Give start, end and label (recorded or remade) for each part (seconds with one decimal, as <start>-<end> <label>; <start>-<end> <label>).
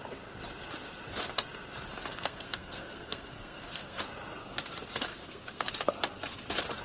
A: 0.0-2.1 recorded; 2.1-4.0 remade; 4.0-5.1 recorded; 5.1-5.7 remade; 5.7-6.8 recorded